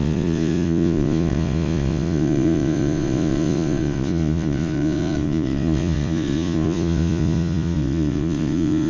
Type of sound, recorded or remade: remade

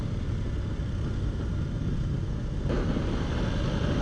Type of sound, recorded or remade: recorded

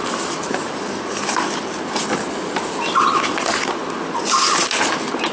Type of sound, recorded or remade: recorded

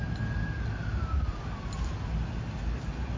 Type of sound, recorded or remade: recorded